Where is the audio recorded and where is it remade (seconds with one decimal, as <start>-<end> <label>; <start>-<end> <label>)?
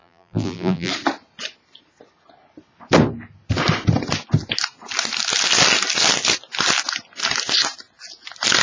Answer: 0.0-0.9 remade; 0.9-8.6 recorded